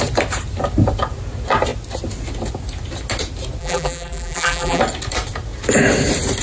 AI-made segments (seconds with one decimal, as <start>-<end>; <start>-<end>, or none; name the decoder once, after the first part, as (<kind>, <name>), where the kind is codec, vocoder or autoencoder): 3.6-4.8 (vocoder, BigVGAN v2)